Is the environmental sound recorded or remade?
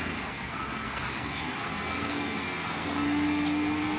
remade